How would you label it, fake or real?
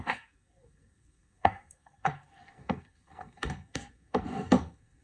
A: fake